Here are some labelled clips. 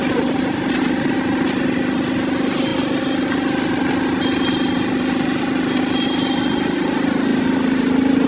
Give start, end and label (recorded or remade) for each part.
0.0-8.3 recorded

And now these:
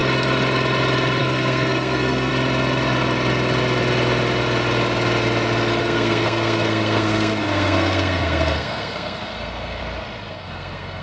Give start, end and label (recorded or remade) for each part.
0.0-1.2 recorded; 1.2-2.3 remade; 2.3-5.8 recorded; 5.8-9.8 remade; 9.8-10.3 recorded; 10.3-11.0 remade

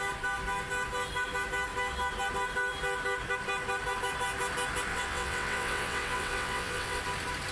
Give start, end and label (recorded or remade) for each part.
0.0-4.9 recorded; 4.9-7.0 remade; 7.0-7.5 recorded

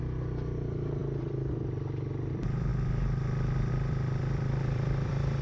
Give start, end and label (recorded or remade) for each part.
0.0-2.7 remade; 2.7-3.7 recorded; 3.7-5.4 remade

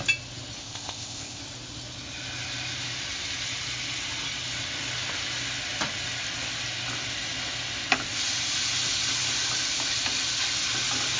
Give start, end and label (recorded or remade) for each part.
0.0-0.6 recorded; 0.6-1.4 remade; 1.4-11.2 recorded

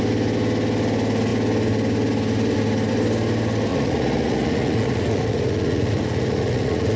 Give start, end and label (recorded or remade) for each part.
0.0-3.7 recorded; 3.7-7.0 remade

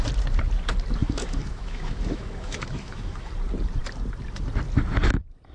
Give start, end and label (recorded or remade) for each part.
0.0-1.0 recorded; 1.0-3.3 remade; 3.3-5.5 recorded